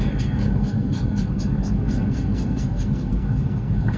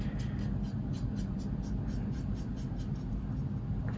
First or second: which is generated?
first